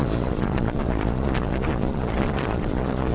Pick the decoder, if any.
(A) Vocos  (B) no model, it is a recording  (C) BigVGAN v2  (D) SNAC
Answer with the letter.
A